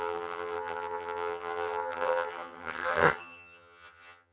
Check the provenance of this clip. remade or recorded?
remade